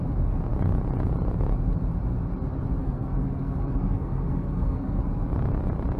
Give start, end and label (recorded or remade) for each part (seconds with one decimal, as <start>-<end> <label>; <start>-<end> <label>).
0.0-2.8 recorded; 2.8-5.0 remade; 5.0-6.0 recorded